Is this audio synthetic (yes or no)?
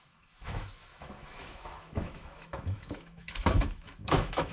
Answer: yes